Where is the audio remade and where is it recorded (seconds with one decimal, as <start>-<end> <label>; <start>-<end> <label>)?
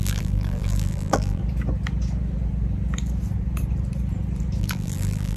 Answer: 0.0-1.4 remade; 1.4-4.6 recorded; 4.6-5.4 remade